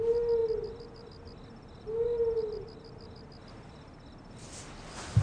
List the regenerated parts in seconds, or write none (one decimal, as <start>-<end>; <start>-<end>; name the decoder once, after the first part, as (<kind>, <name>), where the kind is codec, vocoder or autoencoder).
none